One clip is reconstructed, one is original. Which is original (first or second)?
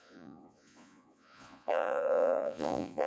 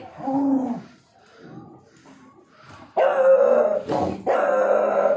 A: second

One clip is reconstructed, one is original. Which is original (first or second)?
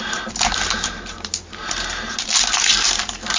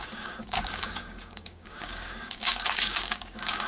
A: first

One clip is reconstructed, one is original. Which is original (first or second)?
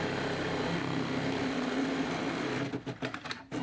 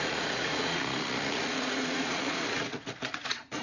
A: first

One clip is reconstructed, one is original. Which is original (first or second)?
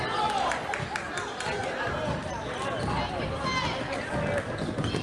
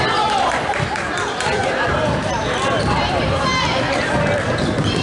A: first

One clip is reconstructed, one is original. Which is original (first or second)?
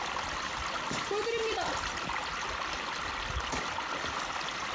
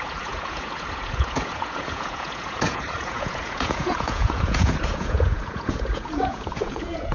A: first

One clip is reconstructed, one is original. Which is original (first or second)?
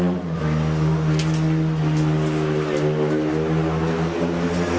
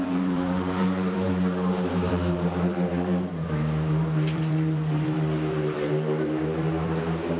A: first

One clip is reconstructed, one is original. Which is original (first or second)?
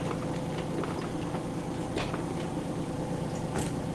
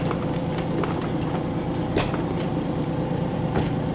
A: first